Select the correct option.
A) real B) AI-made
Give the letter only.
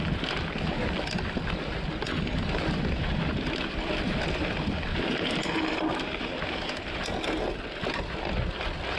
A